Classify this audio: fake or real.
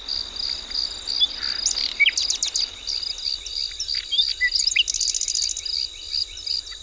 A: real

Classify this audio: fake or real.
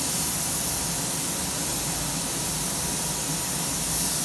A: real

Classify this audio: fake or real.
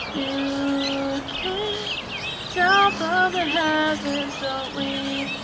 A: real